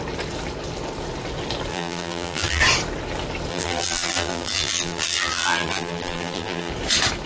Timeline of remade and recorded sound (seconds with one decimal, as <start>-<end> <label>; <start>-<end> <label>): 0.0-1.7 recorded; 1.7-2.6 remade; 2.6-3.5 recorded; 3.5-6.7 remade; 6.7-7.3 recorded